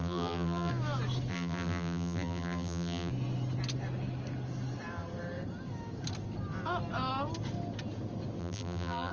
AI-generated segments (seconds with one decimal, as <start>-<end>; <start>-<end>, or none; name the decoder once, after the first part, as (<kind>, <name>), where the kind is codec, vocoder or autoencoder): 0.0-0.7 (vocoder, BigVGAN v2); 1.3-3.1; 8.4-9.1